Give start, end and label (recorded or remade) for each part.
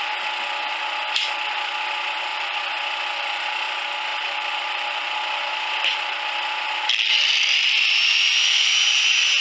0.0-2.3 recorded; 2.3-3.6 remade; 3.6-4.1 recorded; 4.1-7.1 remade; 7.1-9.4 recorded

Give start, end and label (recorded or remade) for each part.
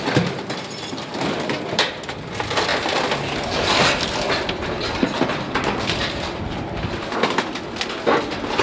0.0-8.6 recorded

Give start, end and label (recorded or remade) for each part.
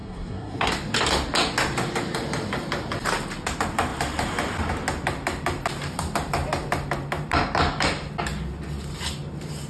0.0-0.7 remade; 0.7-9.7 recorded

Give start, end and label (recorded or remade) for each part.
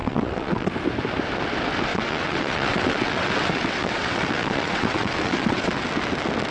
0.0-0.7 remade; 0.7-1.9 recorded; 1.9-5.8 remade; 5.8-6.5 recorded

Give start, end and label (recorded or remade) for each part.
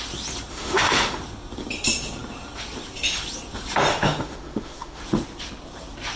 0.0-0.5 recorded; 0.5-1.2 remade; 1.2-3.9 recorded; 3.9-5.0 remade; 5.0-6.2 recorded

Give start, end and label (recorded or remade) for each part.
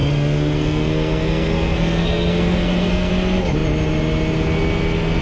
0.0-3.1 remade; 3.1-5.2 recorded